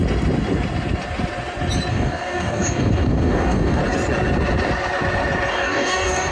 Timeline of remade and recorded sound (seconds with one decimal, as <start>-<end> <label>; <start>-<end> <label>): 0.0-1.9 recorded; 1.9-3.8 remade; 3.8-5.5 recorded; 5.5-6.3 remade